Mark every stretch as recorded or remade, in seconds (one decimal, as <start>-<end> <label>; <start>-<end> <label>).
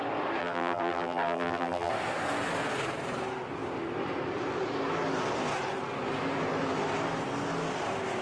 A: 0.0-0.4 recorded; 0.4-1.9 remade; 1.9-8.2 recorded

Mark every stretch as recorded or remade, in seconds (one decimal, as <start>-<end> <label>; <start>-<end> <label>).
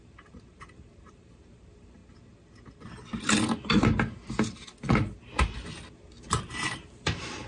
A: 0.0-2.0 remade; 2.0-6.2 recorded; 6.2-7.5 remade